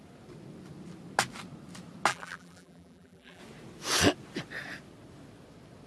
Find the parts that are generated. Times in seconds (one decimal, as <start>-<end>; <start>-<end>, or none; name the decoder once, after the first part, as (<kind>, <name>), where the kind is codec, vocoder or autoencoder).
2.1-3.4 (vocoder, BigVGAN v2)